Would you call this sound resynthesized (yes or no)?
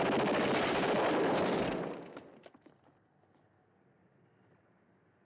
no